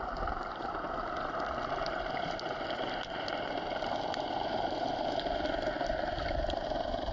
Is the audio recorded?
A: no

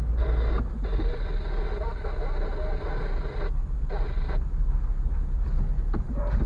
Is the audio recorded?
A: yes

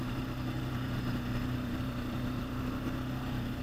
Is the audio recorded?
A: no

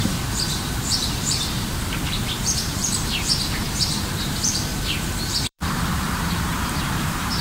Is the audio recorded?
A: no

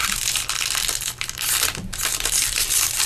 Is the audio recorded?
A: no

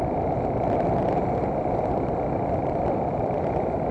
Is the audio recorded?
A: no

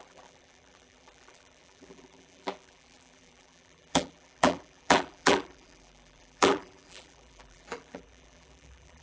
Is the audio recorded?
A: no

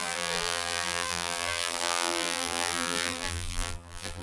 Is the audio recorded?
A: no